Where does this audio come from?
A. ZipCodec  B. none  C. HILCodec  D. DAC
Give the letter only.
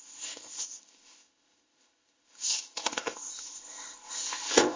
A